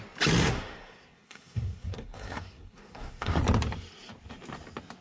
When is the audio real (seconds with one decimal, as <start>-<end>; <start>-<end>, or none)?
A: 0.0-0.4; 3.4-5.0